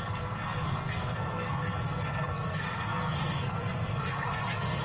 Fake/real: fake